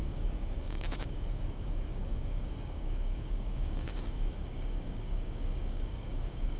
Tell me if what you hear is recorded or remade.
remade